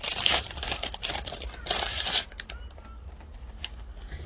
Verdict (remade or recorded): remade